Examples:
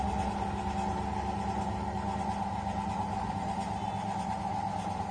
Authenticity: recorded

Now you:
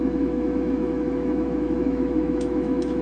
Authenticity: remade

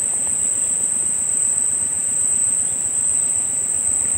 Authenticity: recorded